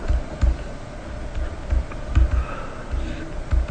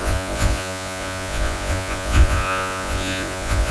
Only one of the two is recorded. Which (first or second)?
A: first